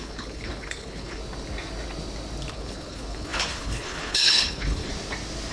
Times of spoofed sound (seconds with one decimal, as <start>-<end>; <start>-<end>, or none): 0.0-1.2; 2.5-4.9